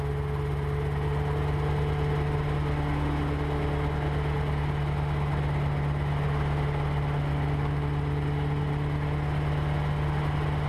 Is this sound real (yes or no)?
yes